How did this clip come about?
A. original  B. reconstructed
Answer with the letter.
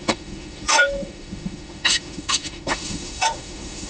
B